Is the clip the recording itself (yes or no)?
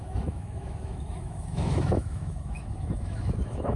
no